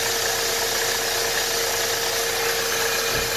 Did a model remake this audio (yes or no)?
no